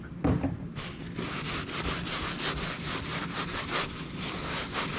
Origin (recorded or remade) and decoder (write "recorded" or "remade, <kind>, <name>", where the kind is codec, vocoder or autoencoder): recorded